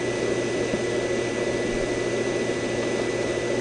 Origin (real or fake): real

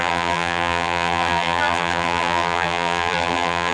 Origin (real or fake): fake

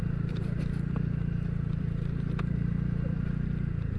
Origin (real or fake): fake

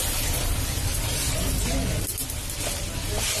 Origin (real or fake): real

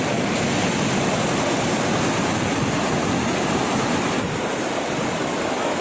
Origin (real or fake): real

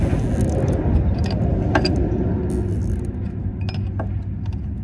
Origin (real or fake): real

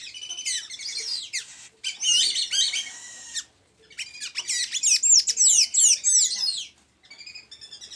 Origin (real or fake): real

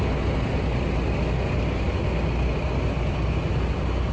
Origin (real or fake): real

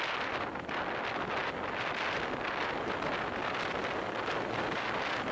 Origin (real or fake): real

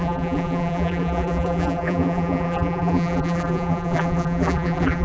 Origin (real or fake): fake